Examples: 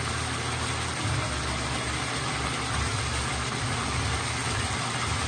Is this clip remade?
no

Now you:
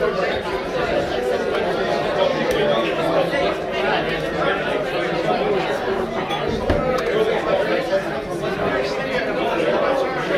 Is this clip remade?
no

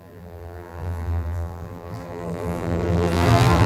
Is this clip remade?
yes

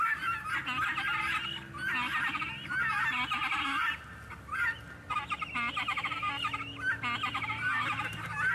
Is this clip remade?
no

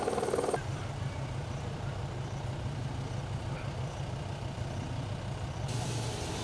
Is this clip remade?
no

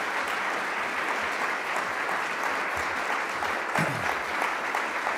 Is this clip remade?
no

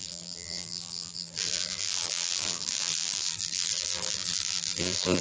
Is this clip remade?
yes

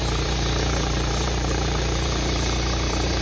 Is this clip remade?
yes